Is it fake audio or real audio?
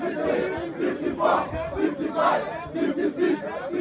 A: fake